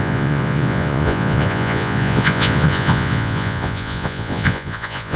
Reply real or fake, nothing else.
fake